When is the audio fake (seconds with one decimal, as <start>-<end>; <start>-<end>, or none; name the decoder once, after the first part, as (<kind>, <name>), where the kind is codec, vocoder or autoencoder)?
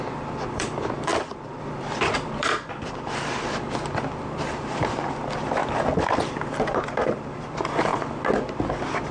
0.0-7.9 (vocoder, BigVGAN v2); 8.7-9.1